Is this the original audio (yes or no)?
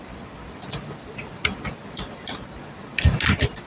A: yes